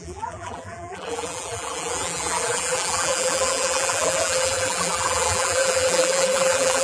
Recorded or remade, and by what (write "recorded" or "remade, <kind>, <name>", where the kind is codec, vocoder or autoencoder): remade, vocoder, BigVGAN v2